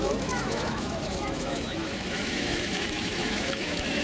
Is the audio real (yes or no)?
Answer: no